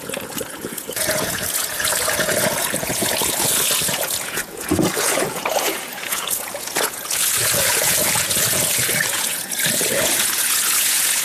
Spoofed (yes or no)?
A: yes